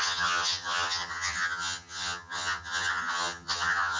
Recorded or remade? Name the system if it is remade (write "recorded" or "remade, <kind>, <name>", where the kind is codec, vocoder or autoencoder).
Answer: remade, vocoder, HiFi-GAN